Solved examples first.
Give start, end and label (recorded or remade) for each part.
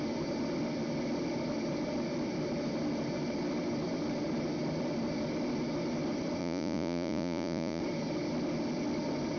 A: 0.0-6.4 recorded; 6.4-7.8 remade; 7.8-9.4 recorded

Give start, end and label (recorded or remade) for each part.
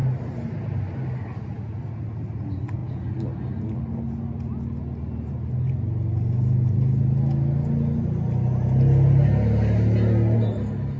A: 0.0-11.0 recorded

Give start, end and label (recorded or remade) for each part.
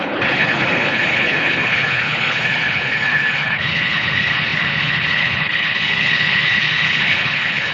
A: 0.0-7.7 remade